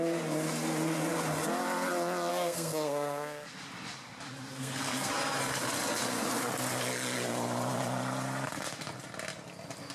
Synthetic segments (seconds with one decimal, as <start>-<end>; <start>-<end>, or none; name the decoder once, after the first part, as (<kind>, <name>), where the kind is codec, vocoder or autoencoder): 2.3-3.5 (codec, SNAC); 4.5-5.1